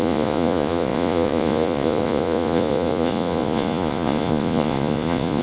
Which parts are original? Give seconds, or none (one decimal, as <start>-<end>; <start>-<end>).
none